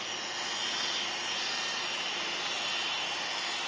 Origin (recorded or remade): recorded